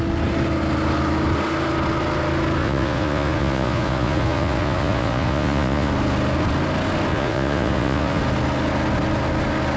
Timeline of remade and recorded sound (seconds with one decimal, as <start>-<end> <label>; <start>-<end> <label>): 0.0-2.6 recorded; 2.6-5.9 remade; 5.9-7.1 recorded; 7.1-8.2 remade; 8.2-9.8 recorded